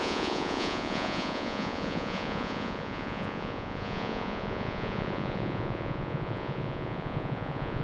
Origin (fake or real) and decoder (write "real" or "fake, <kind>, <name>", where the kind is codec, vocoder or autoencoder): fake, vocoder, Vocos